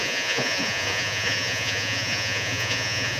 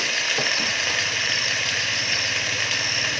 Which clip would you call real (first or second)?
second